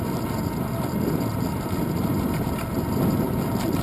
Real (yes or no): yes